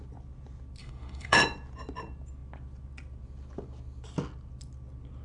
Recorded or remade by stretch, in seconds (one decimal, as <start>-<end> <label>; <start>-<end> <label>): 0.0-0.8 recorded; 0.8-1.4 remade; 1.4-5.2 recorded